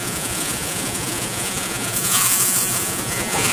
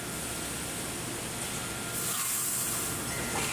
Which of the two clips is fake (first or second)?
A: first